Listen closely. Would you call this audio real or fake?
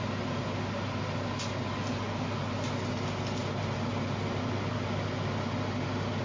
real